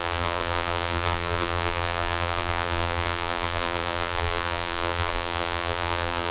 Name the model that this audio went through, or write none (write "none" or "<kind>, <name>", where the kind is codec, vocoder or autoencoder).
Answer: vocoder, BigVGAN v2